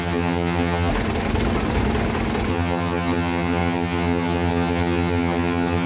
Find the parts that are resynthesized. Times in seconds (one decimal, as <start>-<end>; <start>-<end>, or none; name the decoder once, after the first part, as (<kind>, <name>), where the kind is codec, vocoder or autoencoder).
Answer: 0.0-0.9 (vocoder, HiFi-GAN); 2.5-5.9